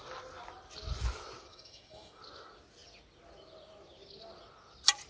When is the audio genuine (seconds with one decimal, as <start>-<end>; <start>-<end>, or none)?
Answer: 0.0-1.5; 2.2-5.1